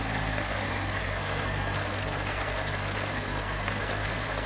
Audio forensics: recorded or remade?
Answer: remade